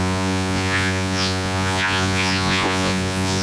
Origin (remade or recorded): remade